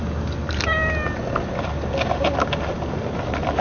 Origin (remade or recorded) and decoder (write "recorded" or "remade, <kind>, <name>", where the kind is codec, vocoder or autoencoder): recorded